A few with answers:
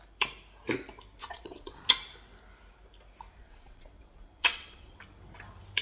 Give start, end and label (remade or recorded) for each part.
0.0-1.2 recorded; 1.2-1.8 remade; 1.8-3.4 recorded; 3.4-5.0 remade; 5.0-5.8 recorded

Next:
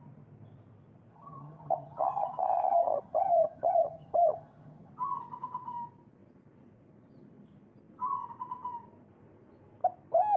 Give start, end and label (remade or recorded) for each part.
0.0-1.1 recorded; 1.1-4.9 remade; 4.9-10.4 recorded